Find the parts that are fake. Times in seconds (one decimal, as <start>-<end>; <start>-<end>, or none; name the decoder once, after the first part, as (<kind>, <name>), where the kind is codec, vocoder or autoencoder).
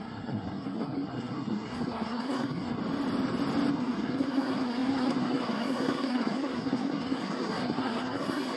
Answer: 0.0-2.8 (codec, SNAC); 3.7-8.6